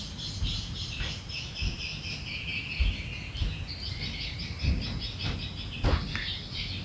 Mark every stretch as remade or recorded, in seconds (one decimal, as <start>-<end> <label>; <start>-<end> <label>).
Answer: 0.0-6.8 recorded